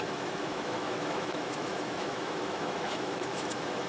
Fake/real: fake